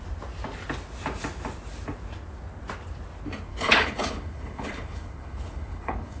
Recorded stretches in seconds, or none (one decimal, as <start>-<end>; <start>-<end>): 0.0-3.5